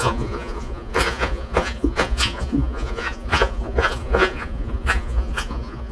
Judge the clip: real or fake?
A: fake